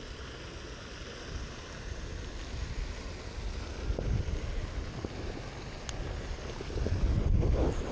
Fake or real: real